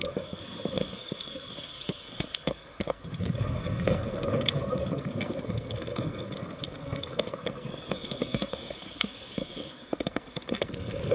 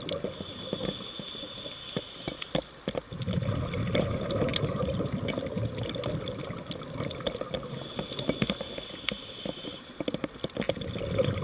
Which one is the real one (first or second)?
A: second